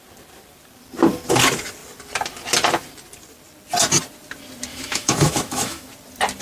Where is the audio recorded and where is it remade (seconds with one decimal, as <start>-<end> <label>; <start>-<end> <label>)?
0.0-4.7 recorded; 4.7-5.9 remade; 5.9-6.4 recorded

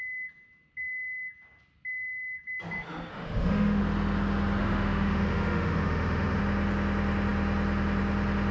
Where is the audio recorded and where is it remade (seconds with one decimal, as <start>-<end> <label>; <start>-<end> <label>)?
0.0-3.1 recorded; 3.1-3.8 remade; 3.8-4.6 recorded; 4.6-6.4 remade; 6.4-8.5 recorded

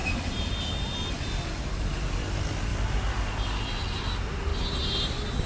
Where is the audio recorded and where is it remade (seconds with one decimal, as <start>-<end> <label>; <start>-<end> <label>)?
0.0-5.5 recorded

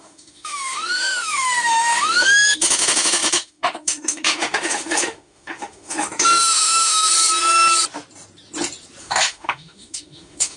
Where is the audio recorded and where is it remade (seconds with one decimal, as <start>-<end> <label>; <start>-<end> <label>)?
0.0-7.1 remade; 7.1-9.0 recorded; 9.0-10.6 remade